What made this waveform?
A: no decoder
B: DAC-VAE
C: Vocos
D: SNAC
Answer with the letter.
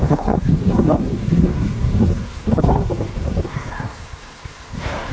D